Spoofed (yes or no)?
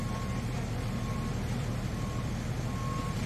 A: no